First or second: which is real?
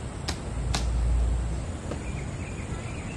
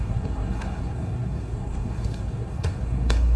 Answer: first